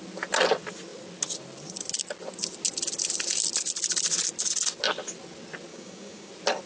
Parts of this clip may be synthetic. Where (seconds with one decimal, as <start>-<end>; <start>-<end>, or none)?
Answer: 5.7-6.3